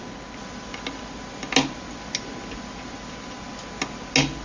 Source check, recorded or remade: recorded